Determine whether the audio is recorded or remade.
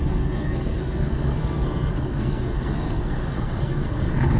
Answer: remade